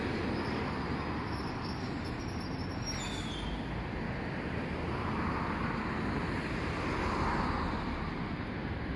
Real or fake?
real